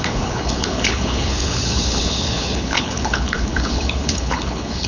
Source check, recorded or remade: remade